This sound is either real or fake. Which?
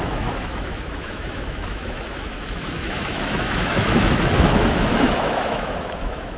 fake